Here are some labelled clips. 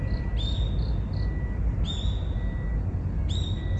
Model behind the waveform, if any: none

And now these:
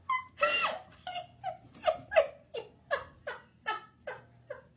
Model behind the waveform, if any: none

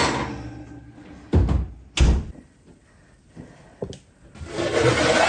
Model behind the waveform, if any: none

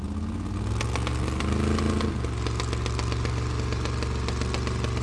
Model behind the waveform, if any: none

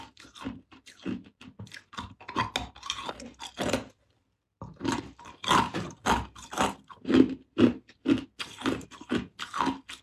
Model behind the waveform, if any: none